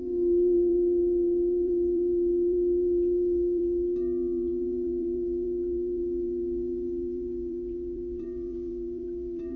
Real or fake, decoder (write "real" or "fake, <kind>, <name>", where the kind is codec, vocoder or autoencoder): fake, vocoder, BigVGAN v2